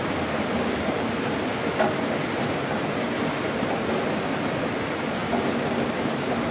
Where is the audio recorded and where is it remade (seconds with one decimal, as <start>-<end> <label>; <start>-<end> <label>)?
0.0-1.5 remade; 1.5-4.6 recorded; 4.6-6.5 remade